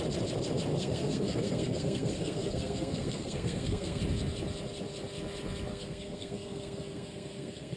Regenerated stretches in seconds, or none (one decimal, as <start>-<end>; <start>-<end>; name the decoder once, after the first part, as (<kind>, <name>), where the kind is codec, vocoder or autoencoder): 0.7-4.0 (codec, SNAC); 5.7-7.8